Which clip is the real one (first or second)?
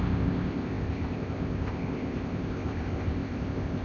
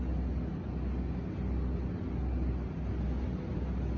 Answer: second